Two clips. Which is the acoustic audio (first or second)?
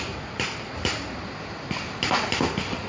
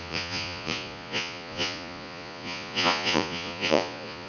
first